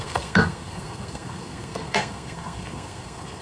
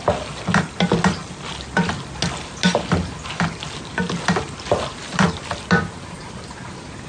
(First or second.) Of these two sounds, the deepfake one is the first